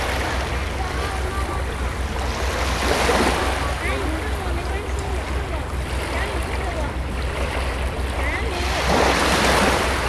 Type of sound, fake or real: real